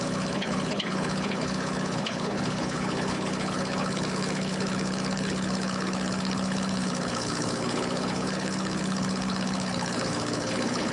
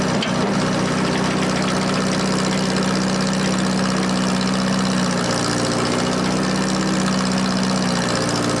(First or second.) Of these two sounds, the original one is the second